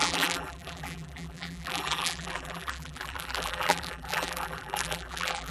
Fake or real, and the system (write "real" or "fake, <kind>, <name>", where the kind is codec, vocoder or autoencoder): fake, vocoder, BigVGAN v2